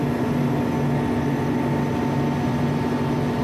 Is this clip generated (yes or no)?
no